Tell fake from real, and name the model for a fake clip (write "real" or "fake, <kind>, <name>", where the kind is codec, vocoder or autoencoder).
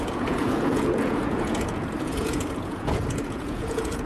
fake, vocoder, Vocos